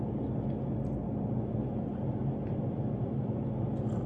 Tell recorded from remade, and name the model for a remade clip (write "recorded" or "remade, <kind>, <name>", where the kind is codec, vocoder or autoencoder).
recorded